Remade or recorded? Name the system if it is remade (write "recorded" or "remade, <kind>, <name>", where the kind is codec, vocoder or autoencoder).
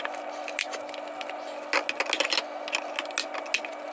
recorded